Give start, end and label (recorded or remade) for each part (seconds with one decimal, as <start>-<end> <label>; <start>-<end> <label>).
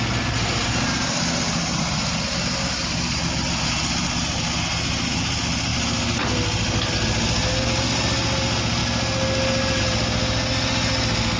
0.0-11.4 recorded